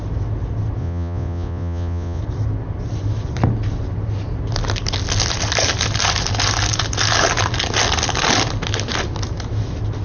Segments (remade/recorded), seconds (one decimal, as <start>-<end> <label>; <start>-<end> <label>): 0.0-0.8 recorded; 0.8-2.2 remade; 2.2-10.0 recorded